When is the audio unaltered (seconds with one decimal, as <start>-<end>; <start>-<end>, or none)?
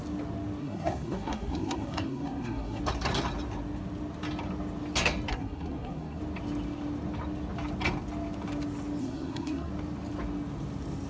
0.0-0.6; 2.8-5.3; 6.2-9.0; 9.7-11.1